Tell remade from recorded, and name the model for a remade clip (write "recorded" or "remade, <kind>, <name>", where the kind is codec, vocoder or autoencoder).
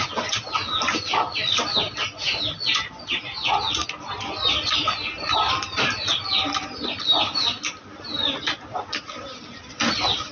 recorded